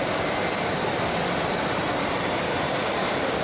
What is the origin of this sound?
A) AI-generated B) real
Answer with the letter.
A